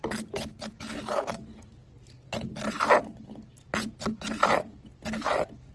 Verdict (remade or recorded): recorded